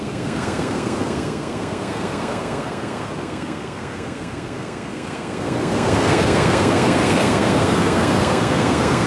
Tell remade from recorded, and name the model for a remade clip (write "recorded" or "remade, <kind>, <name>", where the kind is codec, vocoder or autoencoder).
remade, codec, SNAC